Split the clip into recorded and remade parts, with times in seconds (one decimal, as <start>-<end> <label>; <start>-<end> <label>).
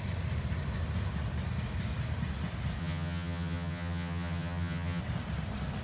0.0-2.8 recorded; 2.8-5.0 remade; 5.0-5.8 recorded